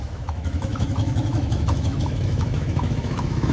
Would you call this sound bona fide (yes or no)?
no